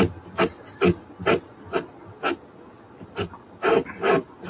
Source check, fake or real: real